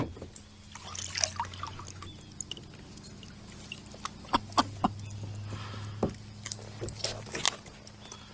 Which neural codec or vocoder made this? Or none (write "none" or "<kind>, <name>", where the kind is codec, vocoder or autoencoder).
none